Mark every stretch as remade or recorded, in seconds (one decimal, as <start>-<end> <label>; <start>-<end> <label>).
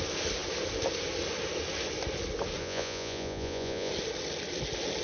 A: 0.0-2.6 recorded; 2.6-3.9 remade; 3.9-5.0 recorded